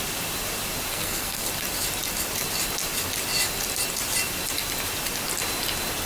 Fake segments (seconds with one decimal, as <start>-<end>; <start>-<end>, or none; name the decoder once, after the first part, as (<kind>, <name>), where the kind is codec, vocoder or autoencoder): 0.9-1.5 (codec, SNAC)